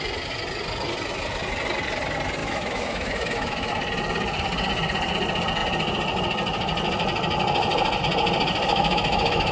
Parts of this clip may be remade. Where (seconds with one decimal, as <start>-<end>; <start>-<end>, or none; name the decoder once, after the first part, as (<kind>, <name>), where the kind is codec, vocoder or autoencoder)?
2.4-3.7 (autoencoder, DAC-VAE); 8.7-9.5